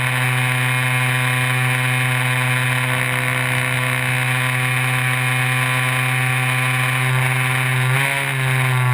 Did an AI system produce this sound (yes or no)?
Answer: no